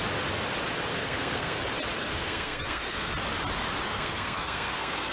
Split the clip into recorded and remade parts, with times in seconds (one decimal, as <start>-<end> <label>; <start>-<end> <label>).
0.0-0.9 recorded; 0.9-1.6 remade; 1.6-2.0 recorded; 2.0-3.1 remade; 3.1-3.9 recorded; 3.9-5.1 remade